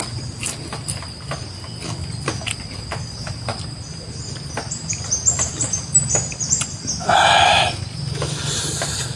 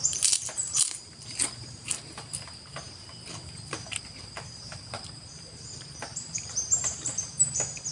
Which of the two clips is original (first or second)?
first